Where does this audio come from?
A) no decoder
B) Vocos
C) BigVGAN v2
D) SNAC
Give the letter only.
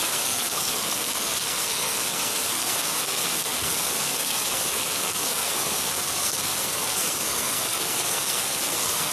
D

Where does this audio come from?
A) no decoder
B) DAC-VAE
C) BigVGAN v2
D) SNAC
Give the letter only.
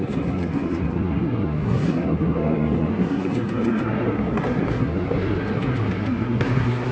D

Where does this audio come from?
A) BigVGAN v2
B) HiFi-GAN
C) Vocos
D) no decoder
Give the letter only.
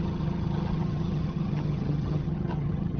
B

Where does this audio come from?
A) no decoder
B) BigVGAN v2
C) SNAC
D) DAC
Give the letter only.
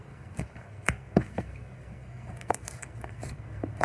C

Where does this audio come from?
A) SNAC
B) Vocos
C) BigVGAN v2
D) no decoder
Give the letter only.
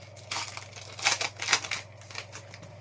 D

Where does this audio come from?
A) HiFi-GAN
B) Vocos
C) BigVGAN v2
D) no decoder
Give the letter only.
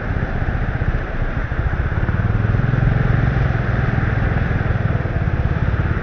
C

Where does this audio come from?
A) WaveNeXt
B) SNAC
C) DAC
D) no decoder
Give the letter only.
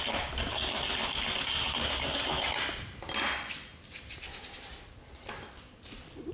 D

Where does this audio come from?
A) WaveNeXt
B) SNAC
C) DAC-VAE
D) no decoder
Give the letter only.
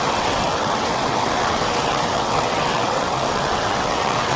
A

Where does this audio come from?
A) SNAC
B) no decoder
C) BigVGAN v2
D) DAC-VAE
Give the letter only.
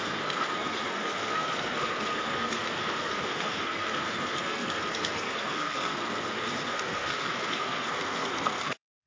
A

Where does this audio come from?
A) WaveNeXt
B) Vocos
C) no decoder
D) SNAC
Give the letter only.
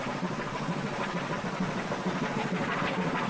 B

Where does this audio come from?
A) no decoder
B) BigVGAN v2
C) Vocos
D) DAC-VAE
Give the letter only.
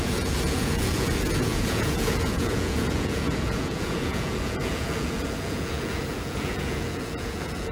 C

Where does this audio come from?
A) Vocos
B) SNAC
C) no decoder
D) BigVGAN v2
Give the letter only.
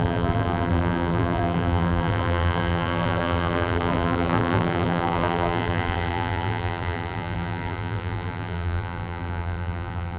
D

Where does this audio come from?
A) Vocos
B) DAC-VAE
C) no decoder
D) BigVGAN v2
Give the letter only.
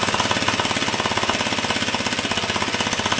C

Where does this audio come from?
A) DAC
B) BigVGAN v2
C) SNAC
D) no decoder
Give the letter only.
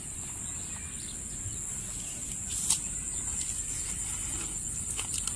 D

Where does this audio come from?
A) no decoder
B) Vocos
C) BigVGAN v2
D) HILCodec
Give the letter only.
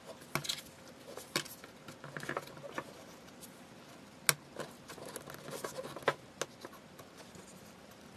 A